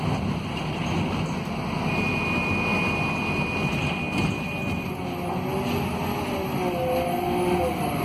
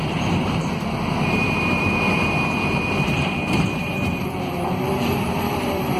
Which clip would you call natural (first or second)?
first